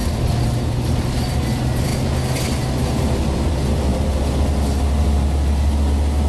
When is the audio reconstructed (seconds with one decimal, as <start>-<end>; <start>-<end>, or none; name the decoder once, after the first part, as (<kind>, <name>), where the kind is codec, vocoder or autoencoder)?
none